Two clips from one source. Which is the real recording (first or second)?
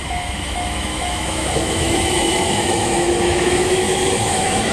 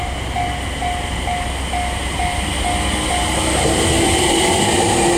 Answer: second